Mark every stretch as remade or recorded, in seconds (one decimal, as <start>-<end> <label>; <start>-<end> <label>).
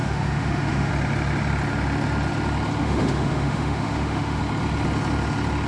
0.0-0.9 remade; 0.9-2.8 recorded; 2.8-4.4 remade; 4.4-5.7 recorded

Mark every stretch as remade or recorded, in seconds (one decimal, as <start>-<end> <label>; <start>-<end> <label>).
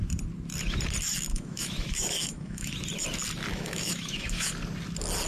0.0-1.3 recorded; 1.3-2.7 remade; 2.7-3.5 recorded; 3.5-4.5 remade; 4.5-5.3 recorded